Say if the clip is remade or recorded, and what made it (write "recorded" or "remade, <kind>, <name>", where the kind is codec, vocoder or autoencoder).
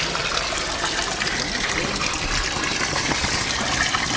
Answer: recorded